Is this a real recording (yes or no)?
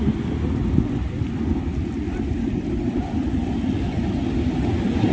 yes